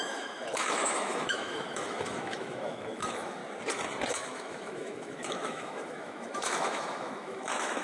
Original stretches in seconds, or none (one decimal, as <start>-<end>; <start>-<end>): 3.4-4.1